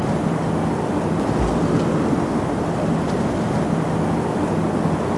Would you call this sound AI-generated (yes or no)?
no